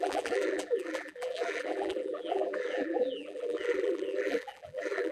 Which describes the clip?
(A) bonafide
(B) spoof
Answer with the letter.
B